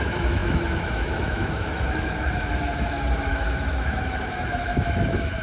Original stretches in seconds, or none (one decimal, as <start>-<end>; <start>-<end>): none